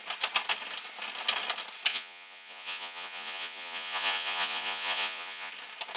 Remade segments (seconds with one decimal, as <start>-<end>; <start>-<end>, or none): 1.9-5.5